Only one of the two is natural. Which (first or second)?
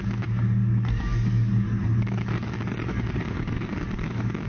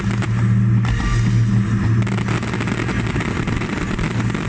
second